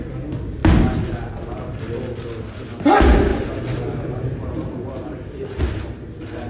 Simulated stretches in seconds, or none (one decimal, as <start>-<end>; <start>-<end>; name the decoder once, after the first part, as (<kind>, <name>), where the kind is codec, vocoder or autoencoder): 3.3-5.6 (vocoder, BigVGAN v2)